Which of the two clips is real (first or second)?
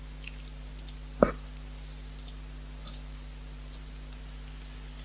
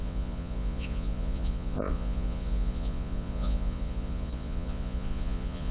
first